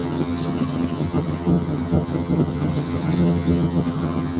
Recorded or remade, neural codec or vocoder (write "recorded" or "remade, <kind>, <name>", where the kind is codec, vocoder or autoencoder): remade, vocoder, HiFi-GAN